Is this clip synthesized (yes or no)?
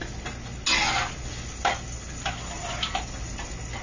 no